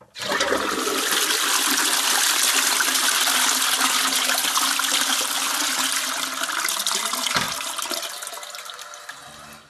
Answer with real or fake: real